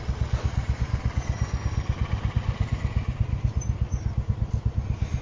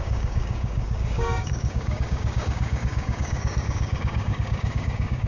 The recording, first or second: first